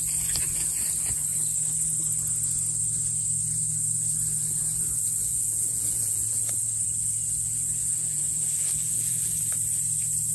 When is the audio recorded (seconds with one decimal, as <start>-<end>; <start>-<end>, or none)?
0.0-5.3; 6.2-7.8; 9.4-10.3